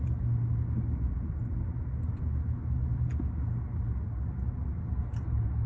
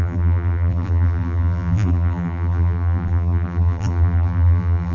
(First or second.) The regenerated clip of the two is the second